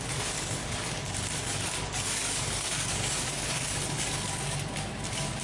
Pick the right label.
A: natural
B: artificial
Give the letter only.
B